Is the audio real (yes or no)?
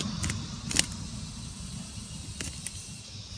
yes